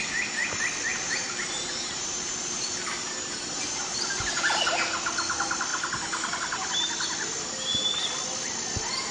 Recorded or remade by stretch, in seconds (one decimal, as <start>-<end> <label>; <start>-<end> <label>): 0.0-0.9 recorded; 0.9-4.2 remade; 4.2-9.1 recorded